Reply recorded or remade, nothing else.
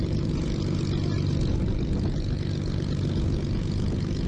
recorded